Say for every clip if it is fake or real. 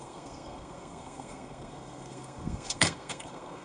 fake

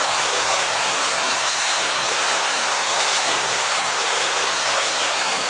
fake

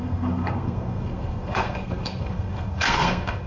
fake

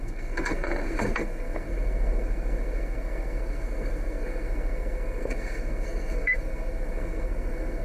fake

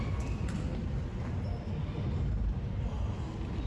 real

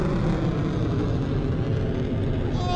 real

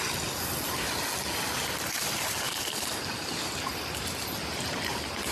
real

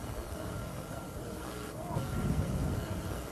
fake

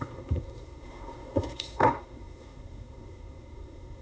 fake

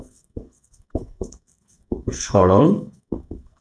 fake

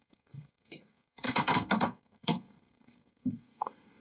fake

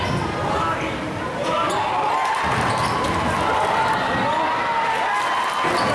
real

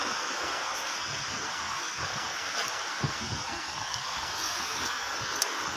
fake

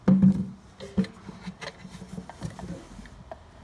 real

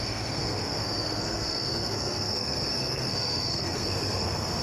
fake